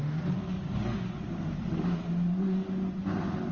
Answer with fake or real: real